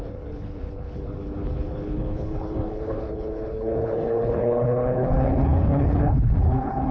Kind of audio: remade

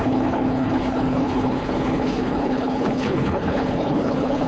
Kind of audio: remade